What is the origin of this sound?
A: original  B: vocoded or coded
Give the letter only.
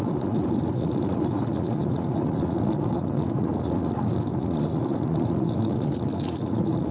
B